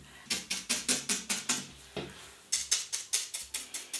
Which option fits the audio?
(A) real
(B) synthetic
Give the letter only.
A